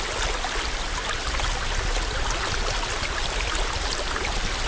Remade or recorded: recorded